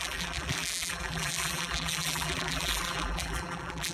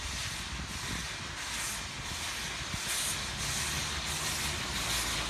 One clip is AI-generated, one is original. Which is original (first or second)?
second